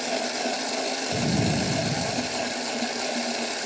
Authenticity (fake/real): real